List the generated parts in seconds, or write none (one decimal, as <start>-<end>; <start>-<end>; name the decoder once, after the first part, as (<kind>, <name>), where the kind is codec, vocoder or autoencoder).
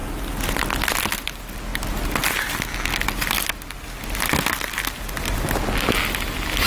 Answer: none